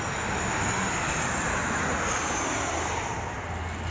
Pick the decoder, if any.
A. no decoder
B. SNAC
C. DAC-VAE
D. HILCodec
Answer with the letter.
A